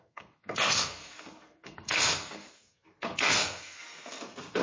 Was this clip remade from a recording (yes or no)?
yes